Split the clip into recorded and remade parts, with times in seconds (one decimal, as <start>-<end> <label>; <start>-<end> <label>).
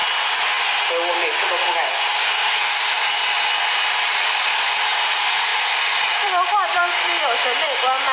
0.0-5.5 recorded; 5.5-6.8 remade; 6.8-8.1 recorded